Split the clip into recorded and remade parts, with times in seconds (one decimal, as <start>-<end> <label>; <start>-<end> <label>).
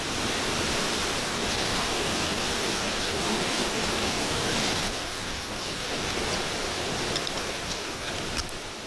0.0-1.2 recorded; 1.2-6.3 remade; 6.3-7.4 recorded; 7.4-8.1 remade; 8.1-8.9 recorded